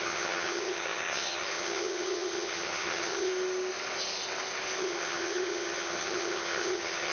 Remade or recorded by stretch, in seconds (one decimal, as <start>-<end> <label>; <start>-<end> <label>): 0.0-3.3 remade; 3.3-4.8 recorded; 4.8-7.1 remade